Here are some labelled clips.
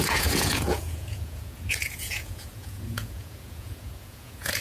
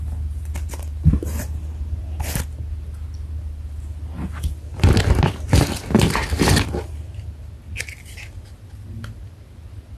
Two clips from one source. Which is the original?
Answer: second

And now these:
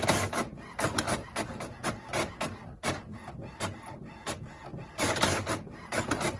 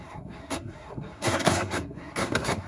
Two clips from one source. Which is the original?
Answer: first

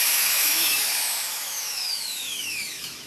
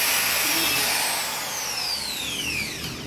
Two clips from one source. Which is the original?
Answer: second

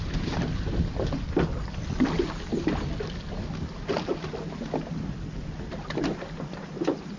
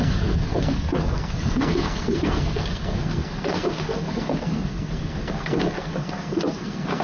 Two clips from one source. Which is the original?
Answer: first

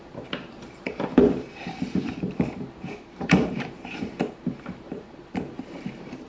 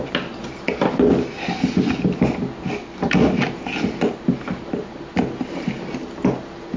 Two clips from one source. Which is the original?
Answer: second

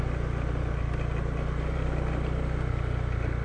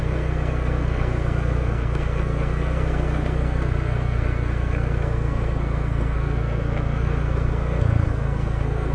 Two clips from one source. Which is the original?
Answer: first